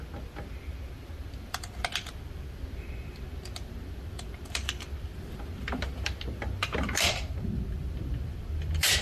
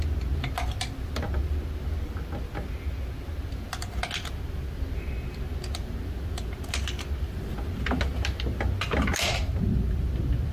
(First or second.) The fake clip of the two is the first